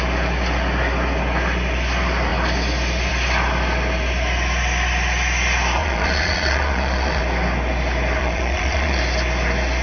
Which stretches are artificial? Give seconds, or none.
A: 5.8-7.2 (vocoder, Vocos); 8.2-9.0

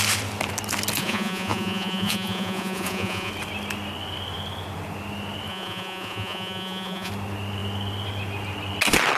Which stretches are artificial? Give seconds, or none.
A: 1.0-3.3 (vocoder, Vocos); 5.5-7.1

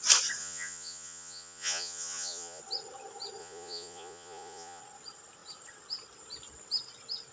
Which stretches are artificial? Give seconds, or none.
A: 0.4-2.6 (vocoder, Vocos); 3.4-4.8

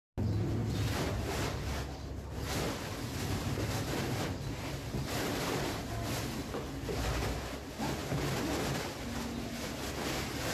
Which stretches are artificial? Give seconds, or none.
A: none